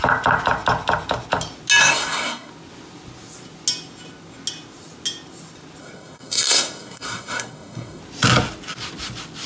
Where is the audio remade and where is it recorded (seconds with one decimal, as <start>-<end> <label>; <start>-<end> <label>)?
0.0-1.8 recorded; 1.8-2.5 remade; 2.5-5.8 recorded; 5.8-8.0 remade; 8.0-9.5 recorded